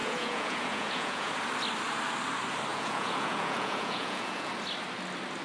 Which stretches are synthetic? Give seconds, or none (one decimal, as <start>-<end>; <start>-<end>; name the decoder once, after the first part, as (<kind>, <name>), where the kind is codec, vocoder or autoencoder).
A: 0.0-1.3 (vocoder, Vocos); 2.7-4.5

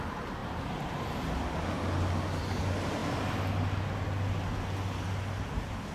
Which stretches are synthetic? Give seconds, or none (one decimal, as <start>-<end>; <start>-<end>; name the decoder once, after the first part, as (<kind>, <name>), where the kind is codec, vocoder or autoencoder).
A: none

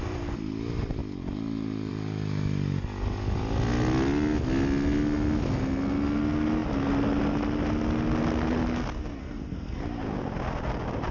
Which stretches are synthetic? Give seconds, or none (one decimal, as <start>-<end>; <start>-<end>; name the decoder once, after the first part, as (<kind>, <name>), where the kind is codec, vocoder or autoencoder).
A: 9.2-9.8 (codec, SNAC)